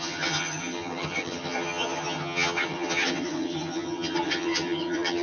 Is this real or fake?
fake